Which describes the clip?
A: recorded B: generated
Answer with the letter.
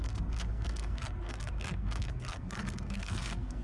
B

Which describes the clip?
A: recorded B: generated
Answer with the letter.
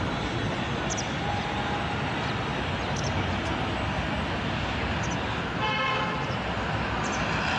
A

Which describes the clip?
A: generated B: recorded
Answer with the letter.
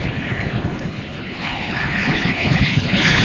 A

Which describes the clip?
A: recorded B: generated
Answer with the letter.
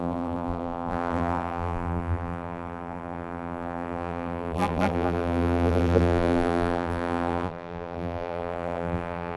B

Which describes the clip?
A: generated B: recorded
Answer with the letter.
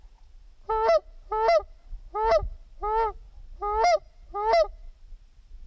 B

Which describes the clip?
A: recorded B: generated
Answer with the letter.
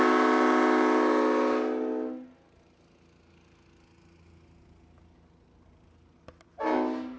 A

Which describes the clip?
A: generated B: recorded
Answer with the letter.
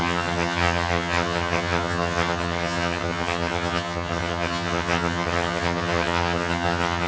A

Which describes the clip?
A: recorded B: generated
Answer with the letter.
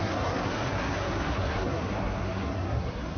B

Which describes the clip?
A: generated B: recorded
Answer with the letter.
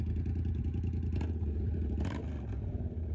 B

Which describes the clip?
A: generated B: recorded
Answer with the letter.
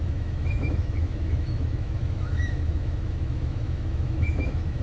A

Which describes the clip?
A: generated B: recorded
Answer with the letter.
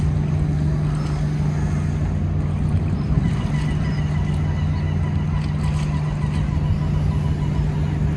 B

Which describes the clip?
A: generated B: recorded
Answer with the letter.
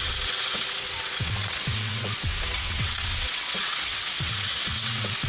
A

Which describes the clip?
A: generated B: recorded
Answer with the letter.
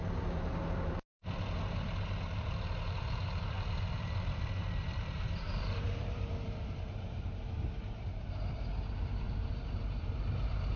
A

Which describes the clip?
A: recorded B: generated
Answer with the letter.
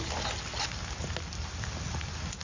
A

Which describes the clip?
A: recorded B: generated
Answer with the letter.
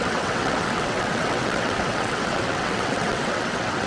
B